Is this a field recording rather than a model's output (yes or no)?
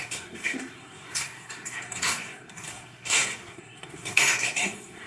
no